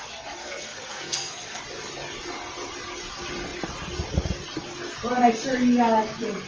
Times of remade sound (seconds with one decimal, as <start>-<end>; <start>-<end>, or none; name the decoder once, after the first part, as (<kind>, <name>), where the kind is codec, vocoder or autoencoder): 0.4-1.6 (codec, SNAC)